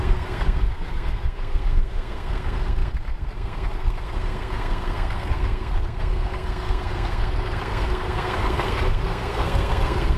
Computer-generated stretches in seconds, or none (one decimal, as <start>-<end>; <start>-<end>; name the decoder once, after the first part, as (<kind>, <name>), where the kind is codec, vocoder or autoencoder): 0.0-10.2 (codec, SNAC)